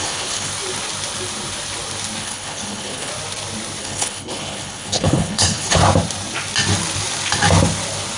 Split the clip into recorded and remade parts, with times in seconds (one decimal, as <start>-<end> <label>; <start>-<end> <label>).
0.0-0.5 remade; 0.5-2.2 recorded; 2.2-3.1 remade; 3.1-3.8 recorded; 3.8-5.8 remade; 5.8-8.2 recorded